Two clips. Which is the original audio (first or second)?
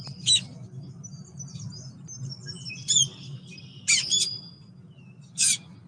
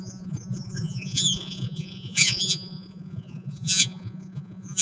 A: first